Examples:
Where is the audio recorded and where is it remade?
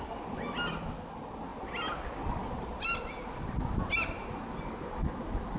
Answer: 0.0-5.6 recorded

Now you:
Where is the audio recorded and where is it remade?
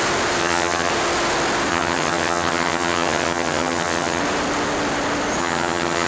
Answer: 0.0-0.4 recorded; 0.4-0.9 remade; 0.9-1.7 recorded; 1.7-4.2 remade; 4.2-5.4 recorded; 5.4-6.1 remade